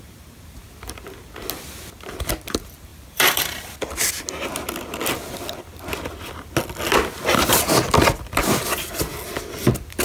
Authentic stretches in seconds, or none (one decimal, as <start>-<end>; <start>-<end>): 0.0-2.9; 3.7-10.0